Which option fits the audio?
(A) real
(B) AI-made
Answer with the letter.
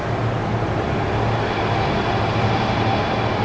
A